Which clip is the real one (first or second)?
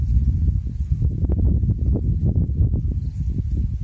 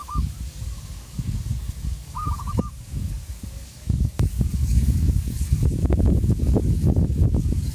first